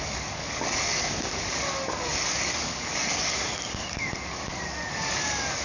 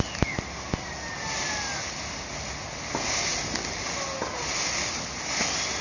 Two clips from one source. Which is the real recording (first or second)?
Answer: second